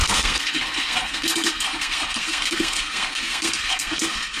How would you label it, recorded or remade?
remade